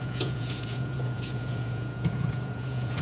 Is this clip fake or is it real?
fake